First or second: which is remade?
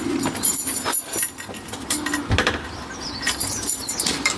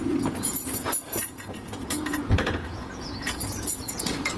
second